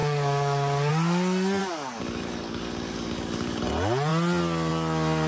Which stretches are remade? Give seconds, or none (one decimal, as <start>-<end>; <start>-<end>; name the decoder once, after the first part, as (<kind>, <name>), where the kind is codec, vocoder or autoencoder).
0.0-0.9 (codec, DAC); 1.6-3.6